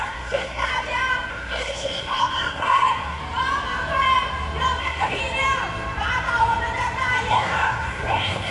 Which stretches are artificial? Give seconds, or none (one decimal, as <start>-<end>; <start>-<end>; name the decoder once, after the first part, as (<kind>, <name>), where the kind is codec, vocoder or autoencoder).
0.0-0.7 (codec, SNAC); 1.3-3.2; 4.8-5.2; 7.3-8.5